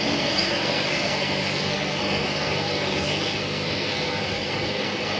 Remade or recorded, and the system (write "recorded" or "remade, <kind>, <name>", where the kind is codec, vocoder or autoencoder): remade, codec, SNAC